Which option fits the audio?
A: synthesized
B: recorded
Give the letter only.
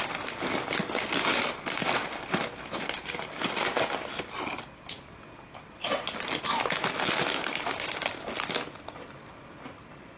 B